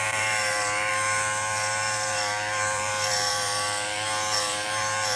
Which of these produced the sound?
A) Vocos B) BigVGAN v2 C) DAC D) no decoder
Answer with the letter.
B